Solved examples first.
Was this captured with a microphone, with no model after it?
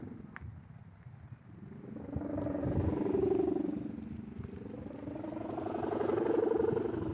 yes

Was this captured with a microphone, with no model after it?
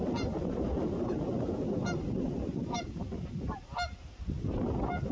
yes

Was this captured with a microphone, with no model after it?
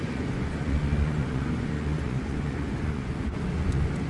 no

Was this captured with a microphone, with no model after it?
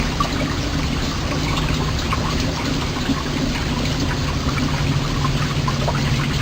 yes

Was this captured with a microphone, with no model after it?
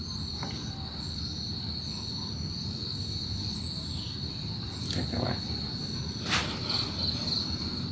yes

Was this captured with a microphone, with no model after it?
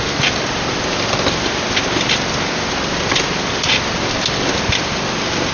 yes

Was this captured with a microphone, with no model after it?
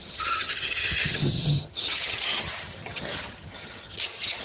no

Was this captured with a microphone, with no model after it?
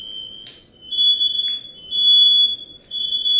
yes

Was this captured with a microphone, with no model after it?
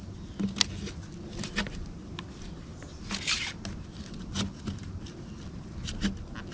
yes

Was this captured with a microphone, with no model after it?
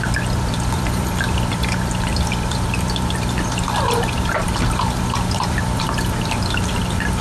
no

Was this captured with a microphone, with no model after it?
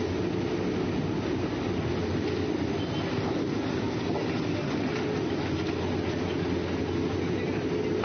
yes